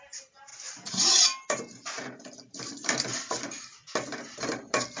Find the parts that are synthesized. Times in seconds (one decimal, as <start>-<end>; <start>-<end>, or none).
0.0-3.7